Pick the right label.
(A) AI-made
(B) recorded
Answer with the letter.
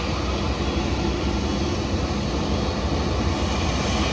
B